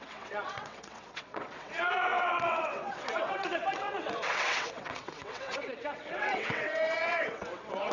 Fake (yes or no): yes